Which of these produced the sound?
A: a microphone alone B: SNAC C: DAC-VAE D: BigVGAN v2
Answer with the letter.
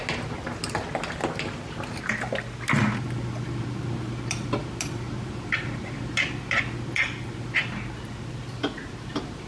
A